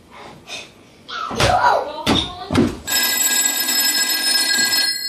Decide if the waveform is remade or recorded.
remade